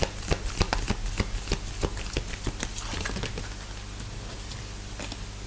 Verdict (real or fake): real